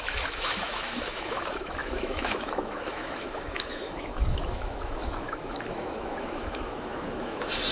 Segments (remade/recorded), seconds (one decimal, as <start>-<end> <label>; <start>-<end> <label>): 0.0-7.7 remade